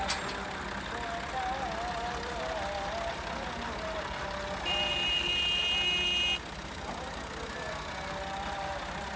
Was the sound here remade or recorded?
recorded